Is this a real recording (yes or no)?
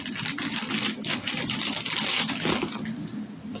yes